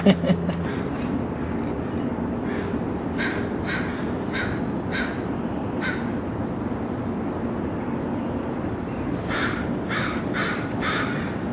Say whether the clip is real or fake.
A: real